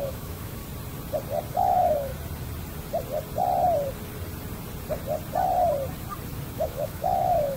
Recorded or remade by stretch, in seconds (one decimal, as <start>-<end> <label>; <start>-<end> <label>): 0.0-0.6 remade; 0.6-1.5 recorded; 1.5-2.1 remade; 2.1-6.5 recorded; 6.5-7.6 remade